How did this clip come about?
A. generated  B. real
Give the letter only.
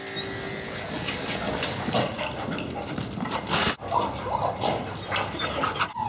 B